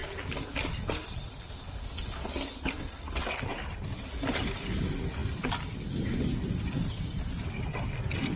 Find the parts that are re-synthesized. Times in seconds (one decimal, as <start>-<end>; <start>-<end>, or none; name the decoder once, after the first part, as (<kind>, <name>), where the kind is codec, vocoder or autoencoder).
none

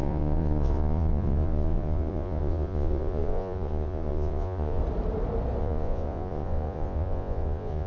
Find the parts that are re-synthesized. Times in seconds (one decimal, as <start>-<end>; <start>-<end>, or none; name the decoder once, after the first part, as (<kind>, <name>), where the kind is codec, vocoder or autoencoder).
0.0-4.8 (vocoder, Vocos); 5.6-7.9

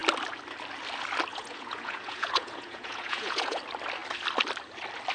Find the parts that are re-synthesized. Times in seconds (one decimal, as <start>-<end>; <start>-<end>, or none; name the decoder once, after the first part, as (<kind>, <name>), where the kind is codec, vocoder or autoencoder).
1.3-3.6 (vocoder, Vocos)

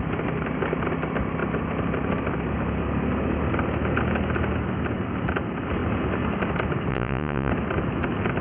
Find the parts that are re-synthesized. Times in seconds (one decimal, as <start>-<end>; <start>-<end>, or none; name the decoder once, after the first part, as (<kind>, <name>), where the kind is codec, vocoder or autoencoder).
6.9-7.5 (vocoder, Vocos)

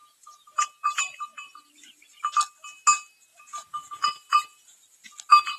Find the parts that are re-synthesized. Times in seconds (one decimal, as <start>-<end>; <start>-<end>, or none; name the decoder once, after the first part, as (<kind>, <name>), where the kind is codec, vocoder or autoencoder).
0.0-1.6 (vocoder, Vocos); 3.3-4.8